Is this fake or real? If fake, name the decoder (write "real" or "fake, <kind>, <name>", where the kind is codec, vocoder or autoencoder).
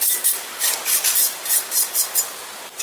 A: real